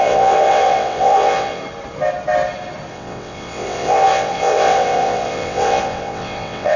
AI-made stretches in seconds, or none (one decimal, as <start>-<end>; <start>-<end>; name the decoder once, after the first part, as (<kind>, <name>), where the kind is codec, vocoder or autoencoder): 0.0-1.6 (vocoder, WaveNeXt); 2.9-6.8